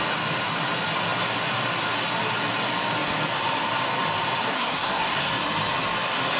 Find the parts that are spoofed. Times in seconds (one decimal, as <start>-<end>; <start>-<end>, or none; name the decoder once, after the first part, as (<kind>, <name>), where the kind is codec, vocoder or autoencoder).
4.5-5.3 (codec, SNAC)